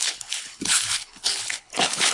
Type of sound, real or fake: fake